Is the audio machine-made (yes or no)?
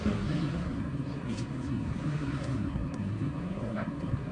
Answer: yes